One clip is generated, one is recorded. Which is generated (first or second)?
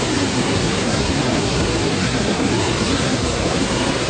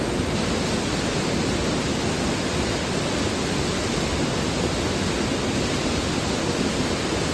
first